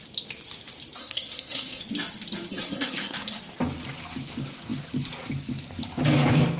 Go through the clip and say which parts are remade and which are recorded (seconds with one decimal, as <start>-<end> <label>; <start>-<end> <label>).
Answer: 0.0-1.0 recorded; 1.0-1.8 remade; 1.8-2.5 recorded; 2.5-3.4 remade; 3.4-6.6 recorded